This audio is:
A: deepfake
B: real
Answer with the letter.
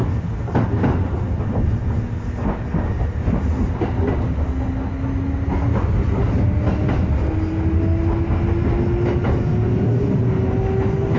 B